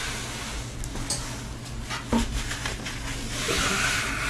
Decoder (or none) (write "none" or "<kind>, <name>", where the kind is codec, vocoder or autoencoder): none